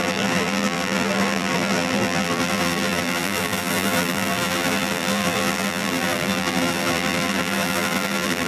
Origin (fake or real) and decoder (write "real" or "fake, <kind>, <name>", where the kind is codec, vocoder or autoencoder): fake, vocoder, BigVGAN v2